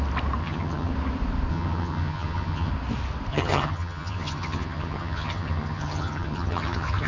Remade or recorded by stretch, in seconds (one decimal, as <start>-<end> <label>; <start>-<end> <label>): 0.0-0.4 recorded; 0.4-0.9 remade; 0.9-1.5 recorded; 1.5-2.7 remade; 2.7-3.3 recorded; 3.3-7.1 remade